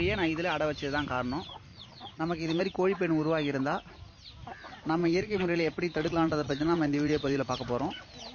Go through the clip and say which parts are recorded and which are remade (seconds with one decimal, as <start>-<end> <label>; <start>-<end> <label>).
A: 0.0-1.7 recorded; 1.7-2.6 remade; 2.6-5.0 recorded; 5.0-7.5 remade; 7.5-8.3 recorded